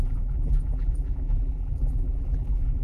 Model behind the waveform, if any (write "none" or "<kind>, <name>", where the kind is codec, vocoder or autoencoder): vocoder, BigVGAN v2